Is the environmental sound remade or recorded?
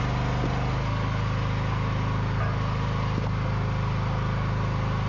recorded